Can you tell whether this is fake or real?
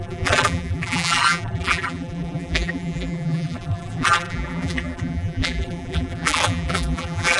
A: fake